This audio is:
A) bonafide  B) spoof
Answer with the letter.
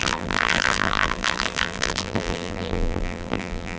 B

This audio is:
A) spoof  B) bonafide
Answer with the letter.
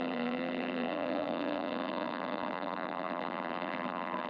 A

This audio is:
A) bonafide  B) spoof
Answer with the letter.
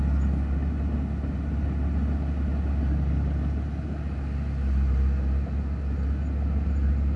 A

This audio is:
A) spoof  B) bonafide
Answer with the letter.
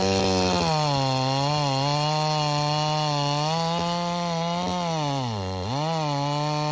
B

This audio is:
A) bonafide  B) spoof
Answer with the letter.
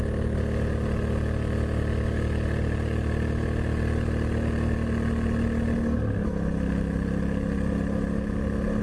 A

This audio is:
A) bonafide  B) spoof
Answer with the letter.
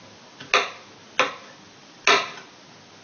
A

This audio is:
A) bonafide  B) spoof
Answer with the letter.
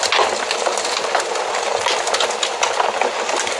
A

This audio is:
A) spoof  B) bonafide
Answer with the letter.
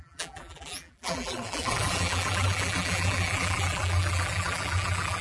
A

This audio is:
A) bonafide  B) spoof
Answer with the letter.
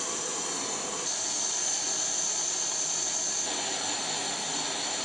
A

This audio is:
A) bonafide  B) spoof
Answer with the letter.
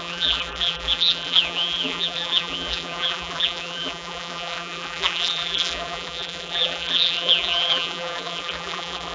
B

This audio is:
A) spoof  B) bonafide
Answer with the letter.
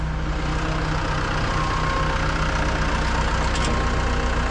B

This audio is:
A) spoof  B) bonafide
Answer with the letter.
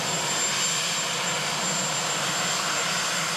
B